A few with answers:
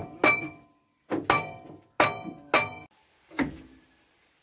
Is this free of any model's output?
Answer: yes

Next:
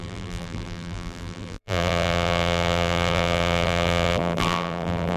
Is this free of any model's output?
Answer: no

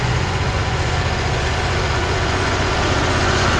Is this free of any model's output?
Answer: no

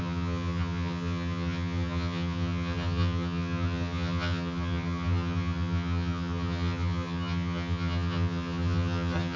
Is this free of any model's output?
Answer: no